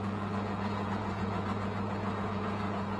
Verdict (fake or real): fake